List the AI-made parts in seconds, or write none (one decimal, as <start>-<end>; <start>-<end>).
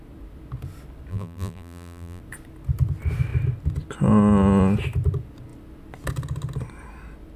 1.1-2.2